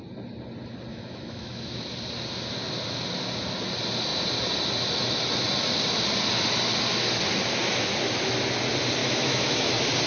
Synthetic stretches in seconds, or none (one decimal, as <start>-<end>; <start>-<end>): 0.9-1.8; 9.0-9.7